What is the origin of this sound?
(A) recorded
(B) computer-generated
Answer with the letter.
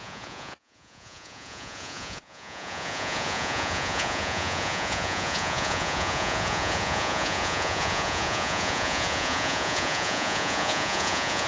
B